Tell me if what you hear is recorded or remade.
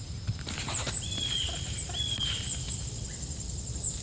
recorded